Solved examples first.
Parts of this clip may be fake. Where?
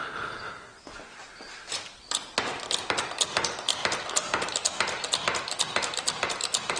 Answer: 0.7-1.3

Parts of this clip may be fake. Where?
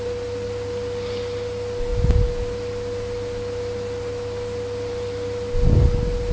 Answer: none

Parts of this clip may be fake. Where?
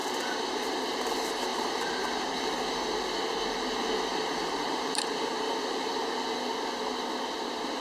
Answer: 0.0-0.8; 1.5-2.5; 4.2-6.0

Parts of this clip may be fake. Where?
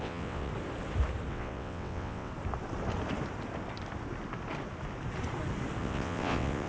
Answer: 0.0-0.5; 1.3-2.3; 5.8-6.7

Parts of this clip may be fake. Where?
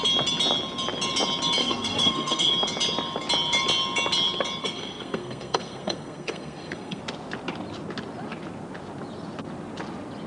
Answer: 1.6-2.5; 4.6-7.0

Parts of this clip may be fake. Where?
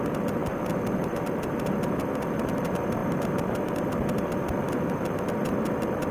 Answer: 0.0-6.1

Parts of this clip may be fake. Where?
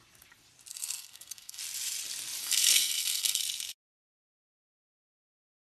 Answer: 0.7-1.6; 2.4-3.4